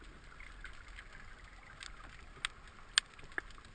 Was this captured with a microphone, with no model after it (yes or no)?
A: yes